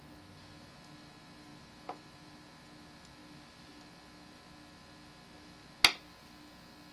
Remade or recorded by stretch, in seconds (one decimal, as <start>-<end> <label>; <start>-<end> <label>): 0.0-6.9 recorded